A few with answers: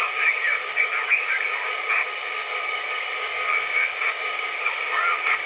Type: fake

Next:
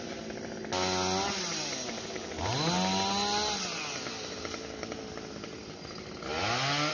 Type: real